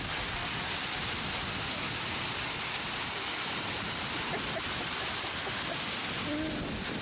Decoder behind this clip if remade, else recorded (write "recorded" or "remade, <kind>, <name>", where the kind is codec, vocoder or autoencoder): recorded